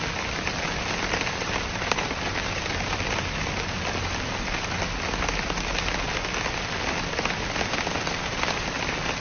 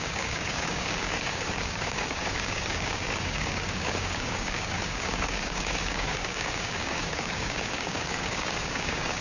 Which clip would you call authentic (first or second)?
first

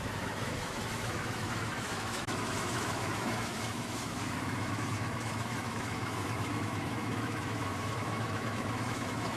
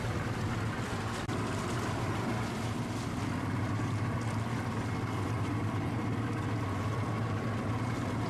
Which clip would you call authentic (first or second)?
second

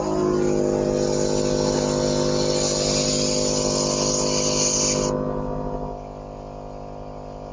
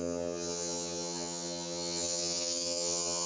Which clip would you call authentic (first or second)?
first